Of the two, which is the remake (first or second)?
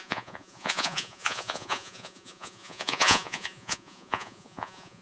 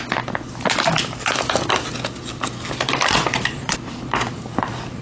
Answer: first